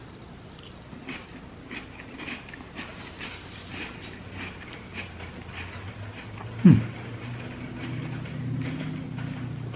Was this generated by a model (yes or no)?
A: no